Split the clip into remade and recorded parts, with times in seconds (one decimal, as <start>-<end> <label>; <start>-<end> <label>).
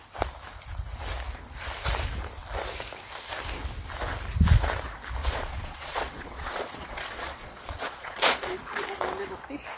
0.0-5.2 recorded; 5.2-8.5 remade; 8.5-9.8 recorded